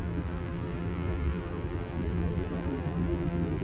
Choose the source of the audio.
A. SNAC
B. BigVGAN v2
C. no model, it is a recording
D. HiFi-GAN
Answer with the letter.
B